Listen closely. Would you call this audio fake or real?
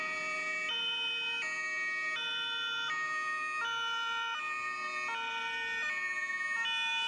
real